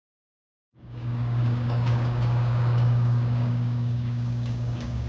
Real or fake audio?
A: fake